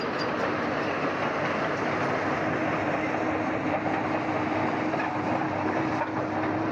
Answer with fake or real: real